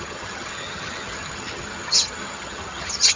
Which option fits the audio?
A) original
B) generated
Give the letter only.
B